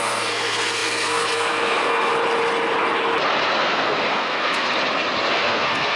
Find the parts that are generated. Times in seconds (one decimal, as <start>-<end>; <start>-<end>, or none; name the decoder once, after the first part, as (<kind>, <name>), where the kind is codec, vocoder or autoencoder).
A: 0.0-2.1 (codec, SNAC); 3.6-4.7; 5.3-6.0